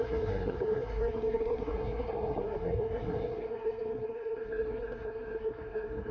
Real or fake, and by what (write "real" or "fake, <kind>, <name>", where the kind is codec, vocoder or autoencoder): fake, codec, SNAC